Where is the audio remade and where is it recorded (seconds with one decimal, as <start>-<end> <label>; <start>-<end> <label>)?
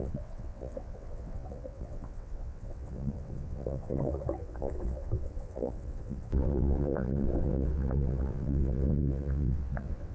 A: 0.0-10.1 remade